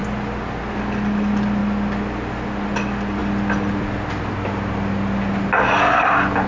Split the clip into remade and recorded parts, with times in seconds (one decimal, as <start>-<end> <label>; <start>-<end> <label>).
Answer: 0.0-6.5 recorded